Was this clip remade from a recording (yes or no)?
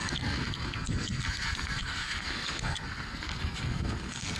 yes